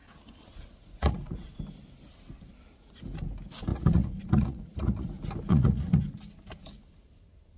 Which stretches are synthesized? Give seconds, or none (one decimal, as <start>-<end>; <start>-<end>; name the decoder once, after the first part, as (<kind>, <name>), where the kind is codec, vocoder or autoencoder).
0.5-1.6 (vocoder, Vocos); 3.7-5.1; 5.5-6.0